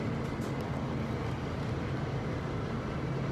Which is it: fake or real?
real